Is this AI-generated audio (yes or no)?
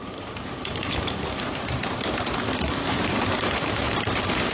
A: yes